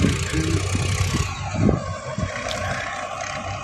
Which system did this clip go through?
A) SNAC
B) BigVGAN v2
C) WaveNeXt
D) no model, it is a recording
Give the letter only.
D